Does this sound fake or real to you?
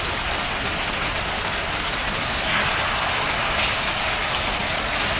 real